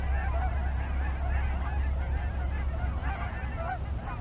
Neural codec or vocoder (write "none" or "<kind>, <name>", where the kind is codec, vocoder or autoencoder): none